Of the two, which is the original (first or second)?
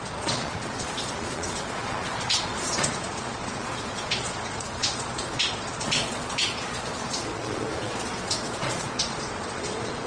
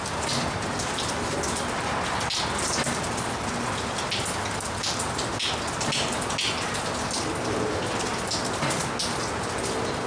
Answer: second